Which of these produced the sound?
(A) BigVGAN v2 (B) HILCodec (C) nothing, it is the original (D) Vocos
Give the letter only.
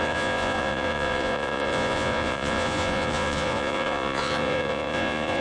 D